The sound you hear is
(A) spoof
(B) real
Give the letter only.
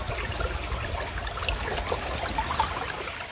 B